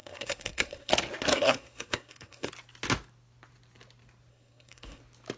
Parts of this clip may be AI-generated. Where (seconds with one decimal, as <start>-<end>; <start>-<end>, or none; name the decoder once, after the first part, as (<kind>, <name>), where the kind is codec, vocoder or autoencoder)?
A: 0.0-0.9 (codec, SNAC); 1.3-2.5; 4.3-5.0